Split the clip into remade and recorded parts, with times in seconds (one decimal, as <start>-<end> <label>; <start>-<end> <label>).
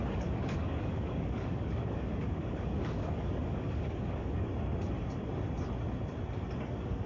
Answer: 0.0-4.5 remade; 4.5-6.6 recorded; 6.6-7.1 remade